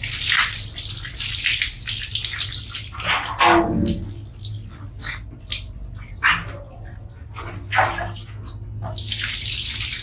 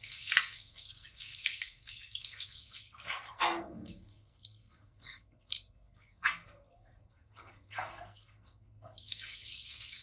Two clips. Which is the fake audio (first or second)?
second